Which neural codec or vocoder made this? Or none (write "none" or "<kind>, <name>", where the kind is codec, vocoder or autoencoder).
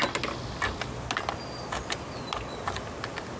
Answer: none